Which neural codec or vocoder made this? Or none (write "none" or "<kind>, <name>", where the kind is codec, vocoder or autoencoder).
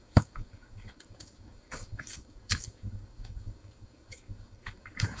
codec, DAC